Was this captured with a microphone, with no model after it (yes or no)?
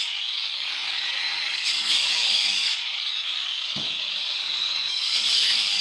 no